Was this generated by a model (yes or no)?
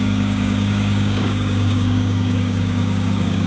yes